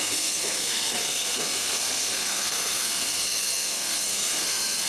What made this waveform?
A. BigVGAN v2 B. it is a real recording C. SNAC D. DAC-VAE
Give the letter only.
C